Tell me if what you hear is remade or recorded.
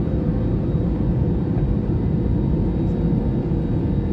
recorded